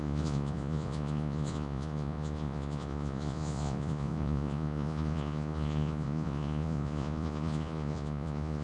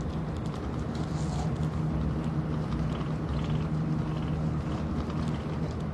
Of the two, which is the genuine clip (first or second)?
second